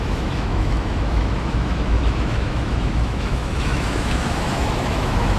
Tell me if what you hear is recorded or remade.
remade